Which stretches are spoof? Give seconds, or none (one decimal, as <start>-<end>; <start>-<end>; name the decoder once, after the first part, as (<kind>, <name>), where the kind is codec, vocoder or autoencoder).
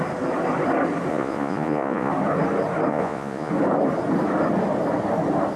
1.1-2.1 (vocoder, Vocos); 2.9-3.5